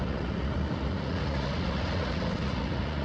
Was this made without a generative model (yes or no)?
no